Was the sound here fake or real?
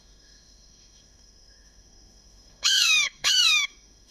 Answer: fake